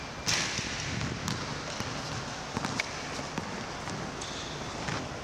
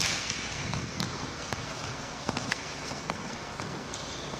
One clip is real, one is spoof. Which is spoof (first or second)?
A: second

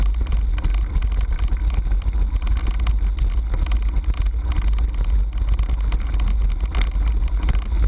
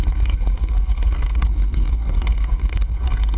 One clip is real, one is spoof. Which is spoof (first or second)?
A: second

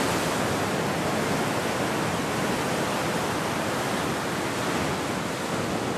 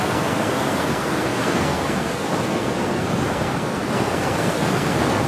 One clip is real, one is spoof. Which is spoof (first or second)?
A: second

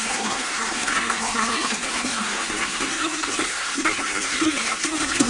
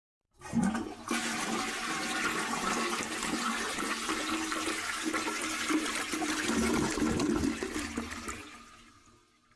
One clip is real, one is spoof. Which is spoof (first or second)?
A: first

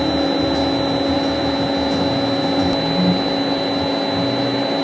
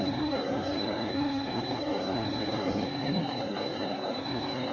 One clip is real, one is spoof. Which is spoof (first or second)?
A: second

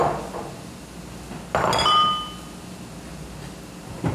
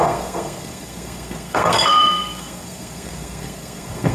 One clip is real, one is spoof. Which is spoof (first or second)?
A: second